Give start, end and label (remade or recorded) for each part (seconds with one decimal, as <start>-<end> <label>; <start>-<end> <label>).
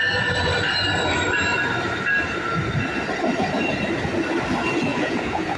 0.0-4.9 recorded; 4.9-5.6 remade